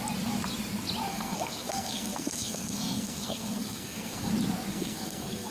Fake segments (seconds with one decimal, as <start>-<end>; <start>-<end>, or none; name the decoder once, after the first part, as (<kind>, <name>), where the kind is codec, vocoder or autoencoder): 1.1-4.3 (codec, SNAC); 4.7-5.5